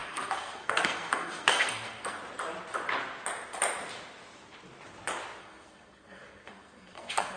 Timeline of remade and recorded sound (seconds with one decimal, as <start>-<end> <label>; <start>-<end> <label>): 0.0-2.2 remade; 2.2-5.4 recorded; 5.4-7.4 remade